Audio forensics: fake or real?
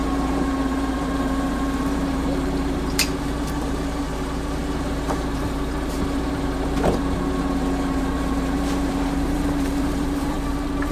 fake